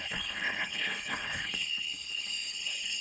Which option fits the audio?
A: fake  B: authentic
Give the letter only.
A